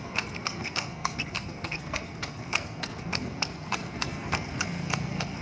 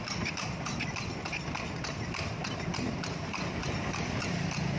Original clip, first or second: second